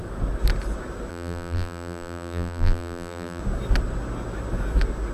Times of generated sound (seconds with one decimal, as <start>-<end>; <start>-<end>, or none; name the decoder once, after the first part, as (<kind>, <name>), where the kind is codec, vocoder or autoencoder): 1.1-3.4 (vocoder, BigVGAN v2)